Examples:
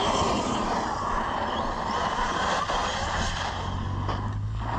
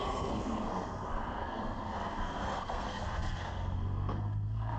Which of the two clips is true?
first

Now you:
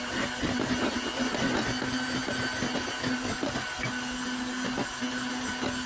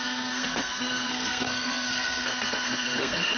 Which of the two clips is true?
first